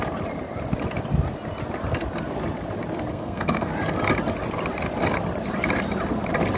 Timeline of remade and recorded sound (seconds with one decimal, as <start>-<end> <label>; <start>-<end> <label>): 0.0-3.1 recorded; 3.1-3.7 remade; 3.7-6.6 recorded